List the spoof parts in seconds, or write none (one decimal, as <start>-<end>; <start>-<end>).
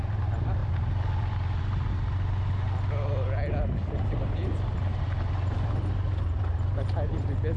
none